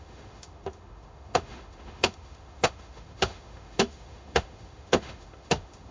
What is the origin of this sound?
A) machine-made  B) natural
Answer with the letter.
A